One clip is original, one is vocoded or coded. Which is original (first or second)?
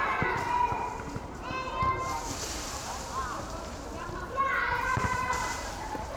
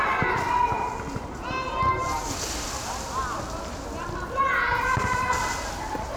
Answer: second